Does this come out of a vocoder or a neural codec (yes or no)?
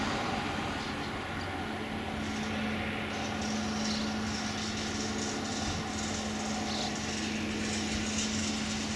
no